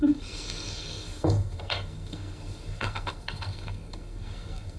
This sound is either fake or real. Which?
fake